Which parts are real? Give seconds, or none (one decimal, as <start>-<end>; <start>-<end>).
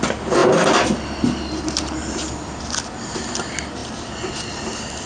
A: 0.0-5.1